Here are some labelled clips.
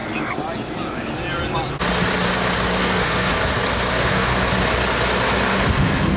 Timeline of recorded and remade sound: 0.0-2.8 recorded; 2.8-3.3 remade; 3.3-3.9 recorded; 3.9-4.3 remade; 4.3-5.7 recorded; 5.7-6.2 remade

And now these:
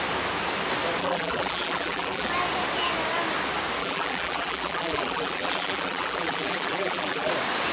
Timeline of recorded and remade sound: 0.0-1.0 recorded; 1.0-2.3 remade; 2.3-3.8 recorded; 3.8-7.3 remade; 7.3-7.7 recorded

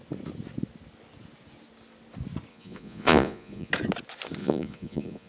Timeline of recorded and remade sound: 0.0-2.5 recorded; 2.5-3.7 remade; 3.7-4.4 recorded; 4.4-5.3 remade

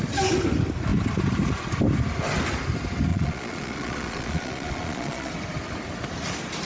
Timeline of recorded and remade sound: 0.0-3.1 recorded; 3.1-5.3 remade; 5.3-6.6 recorded

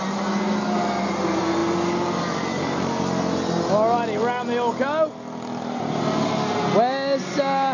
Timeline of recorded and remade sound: 0.0-7.7 recorded